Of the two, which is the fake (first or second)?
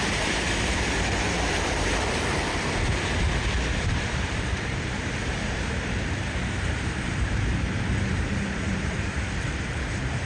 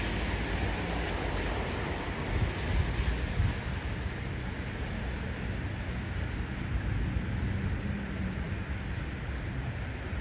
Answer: first